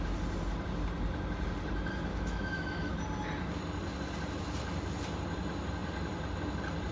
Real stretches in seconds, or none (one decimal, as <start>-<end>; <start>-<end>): 0.0-2.1; 3.0-6.9